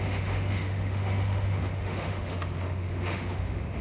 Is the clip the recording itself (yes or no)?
no